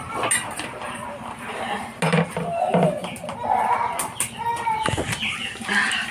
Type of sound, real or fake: real